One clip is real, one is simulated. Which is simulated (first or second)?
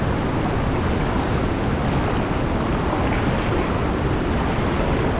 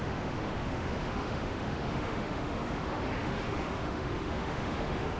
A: second